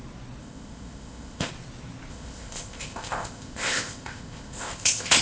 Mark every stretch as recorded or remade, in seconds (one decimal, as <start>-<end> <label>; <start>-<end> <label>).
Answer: 0.0-0.4 recorded; 0.4-1.5 remade; 1.5-2.1 recorded; 2.1-5.2 remade